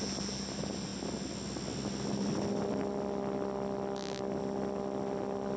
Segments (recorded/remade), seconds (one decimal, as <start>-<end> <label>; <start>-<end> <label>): 0.0-5.6 recorded